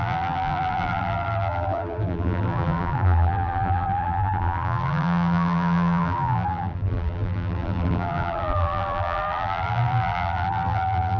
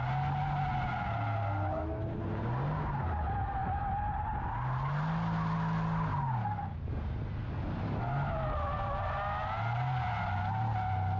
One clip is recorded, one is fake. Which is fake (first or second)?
first